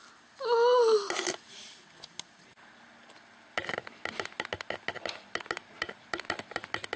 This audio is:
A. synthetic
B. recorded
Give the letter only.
B